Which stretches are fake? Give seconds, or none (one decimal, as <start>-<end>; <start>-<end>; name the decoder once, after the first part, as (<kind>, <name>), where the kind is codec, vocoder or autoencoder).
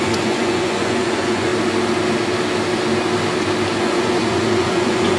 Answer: 0.0-1.5 (vocoder, Vocos); 3.8-5.2